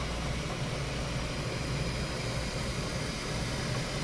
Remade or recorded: recorded